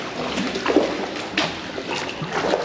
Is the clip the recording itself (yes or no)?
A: yes